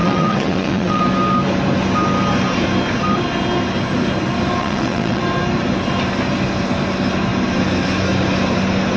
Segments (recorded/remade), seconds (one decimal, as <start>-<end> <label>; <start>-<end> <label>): 0.0-1.0 remade; 1.0-4.6 recorded; 4.6-5.2 remade; 5.2-9.0 recorded